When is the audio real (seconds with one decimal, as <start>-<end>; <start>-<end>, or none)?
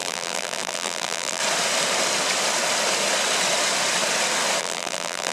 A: 1.4-4.6